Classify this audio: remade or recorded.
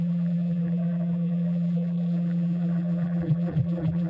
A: remade